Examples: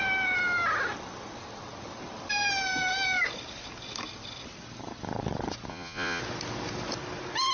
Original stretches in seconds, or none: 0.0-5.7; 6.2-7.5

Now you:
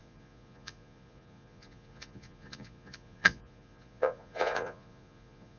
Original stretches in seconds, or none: none